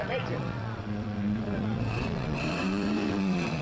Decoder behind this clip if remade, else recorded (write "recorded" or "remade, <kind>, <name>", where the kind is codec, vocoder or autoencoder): remade, vocoder, WaveNeXt